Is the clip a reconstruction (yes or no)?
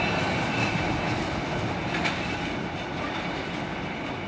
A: no